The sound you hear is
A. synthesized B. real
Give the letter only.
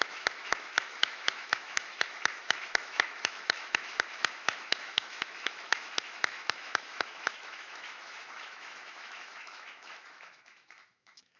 A